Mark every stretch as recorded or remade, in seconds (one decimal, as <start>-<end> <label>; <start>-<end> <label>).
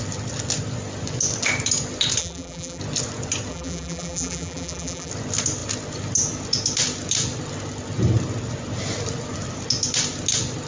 0.0-2.2 recorded; 2.2-2.8 remade; 2.8-3.5 recorded; 3.5-5.1 remade; 5.1-10.7 recorded